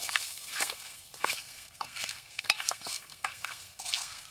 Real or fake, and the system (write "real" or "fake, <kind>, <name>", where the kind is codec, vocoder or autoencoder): fake, codec, SNAC